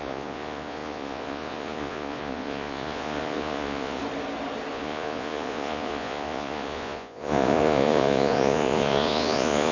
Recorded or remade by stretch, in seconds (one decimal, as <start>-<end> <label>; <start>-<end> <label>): 0.0-4.0 remade; 4.0-4.7 recorded; 4.7-9.7 remade